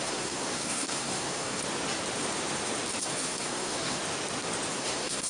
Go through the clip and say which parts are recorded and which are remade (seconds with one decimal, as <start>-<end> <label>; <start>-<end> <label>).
0.0-1.6 remade; 1.6-3.0 recorded; 3.0-4.0 remade; 4.0-4.7 recorded; 4.7-5.3 remade